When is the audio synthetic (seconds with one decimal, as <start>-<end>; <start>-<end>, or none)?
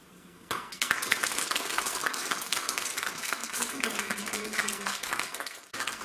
0.0-6.0